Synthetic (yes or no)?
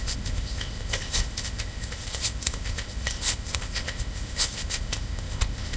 yes